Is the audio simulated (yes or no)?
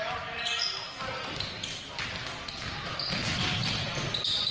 no